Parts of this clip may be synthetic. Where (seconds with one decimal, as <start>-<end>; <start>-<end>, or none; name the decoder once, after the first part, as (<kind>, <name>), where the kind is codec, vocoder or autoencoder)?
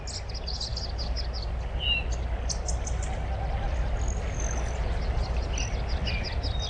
none